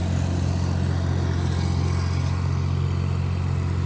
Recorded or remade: recorded